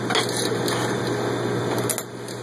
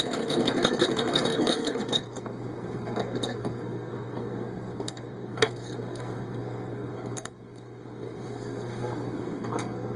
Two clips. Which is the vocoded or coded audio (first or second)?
second